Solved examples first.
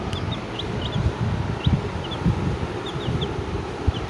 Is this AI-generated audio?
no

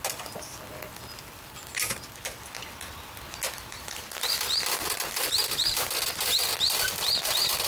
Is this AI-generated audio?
no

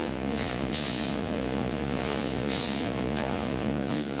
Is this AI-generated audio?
yes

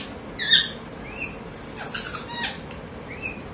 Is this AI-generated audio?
no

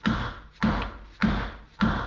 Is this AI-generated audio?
no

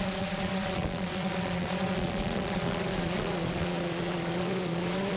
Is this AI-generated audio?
yes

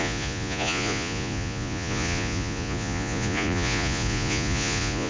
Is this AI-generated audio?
yes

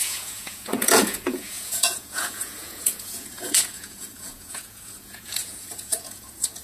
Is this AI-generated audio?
yes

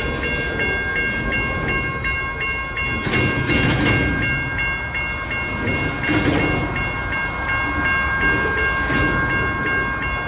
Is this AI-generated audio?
no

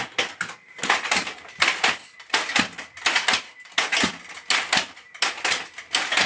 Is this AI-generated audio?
no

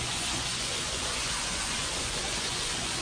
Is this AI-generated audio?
yes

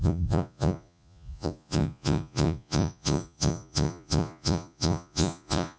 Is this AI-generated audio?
yes